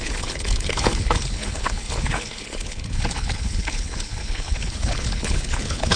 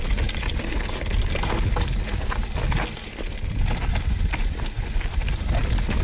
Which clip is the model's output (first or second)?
first